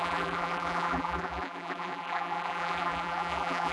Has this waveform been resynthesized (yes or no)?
yes